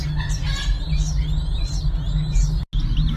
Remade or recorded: recorded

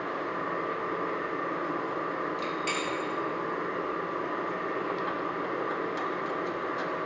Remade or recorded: recorded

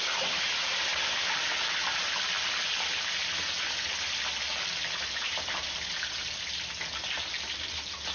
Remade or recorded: recorded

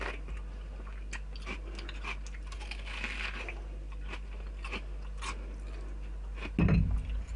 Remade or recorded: recorded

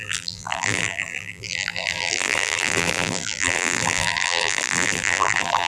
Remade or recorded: remade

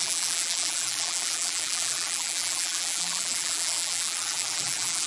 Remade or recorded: remade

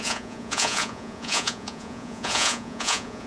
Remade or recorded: remade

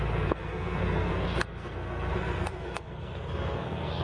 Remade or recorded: remade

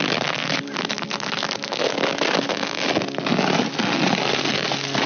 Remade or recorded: recorded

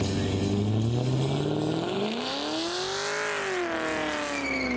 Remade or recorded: recorded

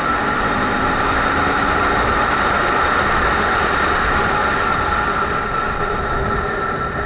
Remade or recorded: recorded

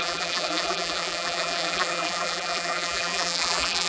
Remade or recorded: remade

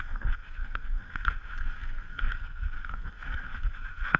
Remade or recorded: remade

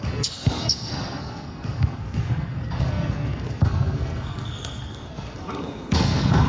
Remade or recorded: remade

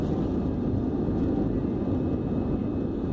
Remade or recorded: recorded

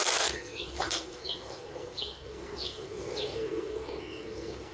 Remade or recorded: remade